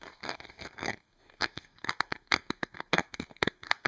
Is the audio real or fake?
fake